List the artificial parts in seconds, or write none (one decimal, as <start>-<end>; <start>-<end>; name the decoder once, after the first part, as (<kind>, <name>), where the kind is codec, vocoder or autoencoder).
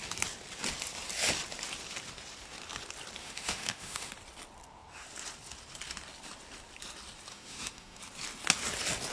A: 3.2-4.1 (autoencoder, DAC-VAE); 7.3-8.0